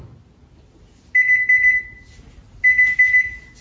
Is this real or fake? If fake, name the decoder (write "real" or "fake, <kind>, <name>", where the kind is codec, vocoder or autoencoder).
real